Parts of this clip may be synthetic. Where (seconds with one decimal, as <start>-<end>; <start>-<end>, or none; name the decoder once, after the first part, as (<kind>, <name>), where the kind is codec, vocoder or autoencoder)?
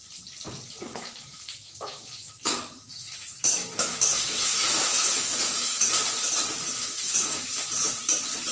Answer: 0.9-5.9 (autoencoder, DAC-VAE); 6.8-7.4